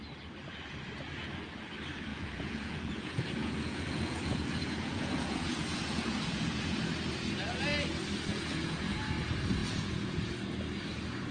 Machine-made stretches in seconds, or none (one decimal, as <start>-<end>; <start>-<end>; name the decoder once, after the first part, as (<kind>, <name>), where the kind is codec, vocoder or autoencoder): 2.1-6.8 (vocoder, Vocos); 8.3-9.0; 9.6-10.3